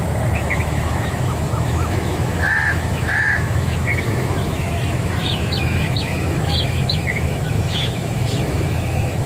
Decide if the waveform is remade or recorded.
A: remade